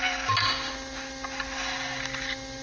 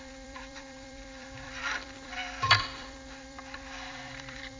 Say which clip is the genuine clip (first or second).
first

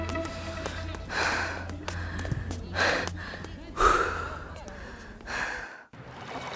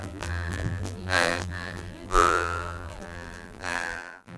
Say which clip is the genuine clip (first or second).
first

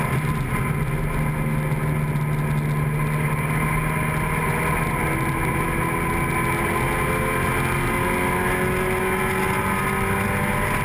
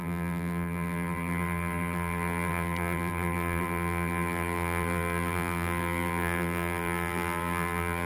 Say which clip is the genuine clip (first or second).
first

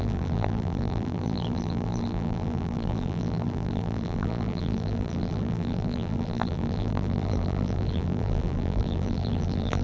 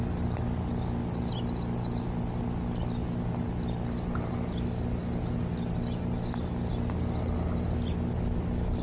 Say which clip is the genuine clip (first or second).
second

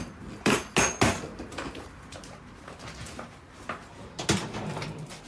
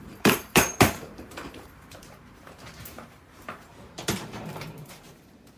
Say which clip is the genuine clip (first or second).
first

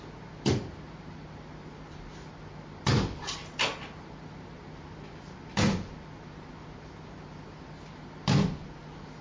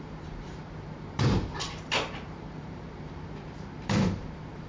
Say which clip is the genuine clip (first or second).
first